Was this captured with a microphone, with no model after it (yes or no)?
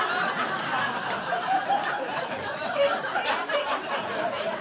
no